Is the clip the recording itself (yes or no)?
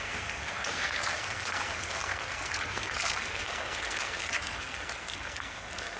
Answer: no